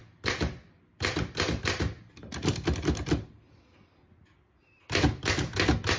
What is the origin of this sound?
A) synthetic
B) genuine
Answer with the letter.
B